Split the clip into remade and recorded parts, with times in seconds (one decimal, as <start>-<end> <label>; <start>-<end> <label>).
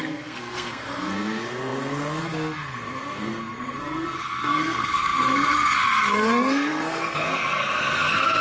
0.0-8.4 remade